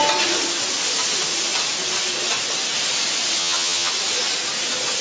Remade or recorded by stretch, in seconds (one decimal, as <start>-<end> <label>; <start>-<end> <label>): 0.0-3.4 recorded; 3.4-3.9 remade; 3.9-5.0 recorded

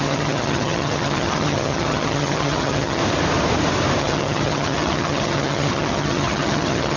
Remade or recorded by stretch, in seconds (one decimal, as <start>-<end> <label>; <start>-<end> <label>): 0.0-3.0 remade; 3.0-4.0 recorded; 4.0-7.0 remade

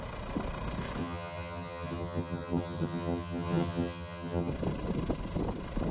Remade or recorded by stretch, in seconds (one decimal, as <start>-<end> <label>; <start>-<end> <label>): 0.0-1.0 recorded; 1.0-4.5 remade; 4.5-5.9 recorded

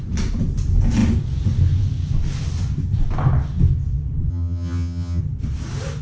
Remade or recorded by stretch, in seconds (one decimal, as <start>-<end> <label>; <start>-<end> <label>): 0.0-4.3 recorded; 4.3-5.2 remade; 5.2-6.0 recorded